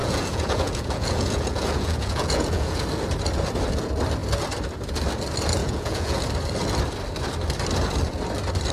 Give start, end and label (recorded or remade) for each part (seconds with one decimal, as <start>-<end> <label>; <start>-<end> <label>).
0.0-2.8 remade; 2.8-5.6 recorded; 5.6-6.2 remade; 6.2-8.7 recorded